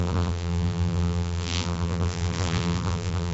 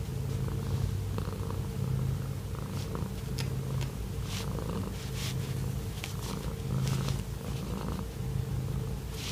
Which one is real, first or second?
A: second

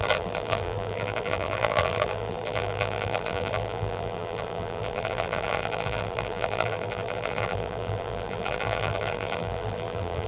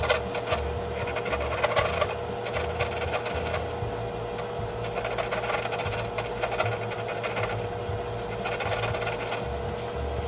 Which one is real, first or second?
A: second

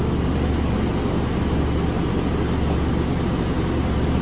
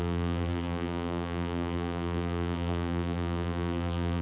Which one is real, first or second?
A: first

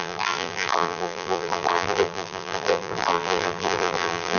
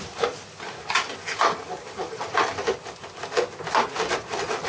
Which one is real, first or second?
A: second